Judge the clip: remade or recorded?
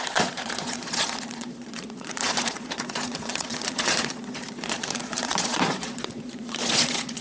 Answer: remade